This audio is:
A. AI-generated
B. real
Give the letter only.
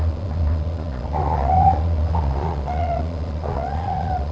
A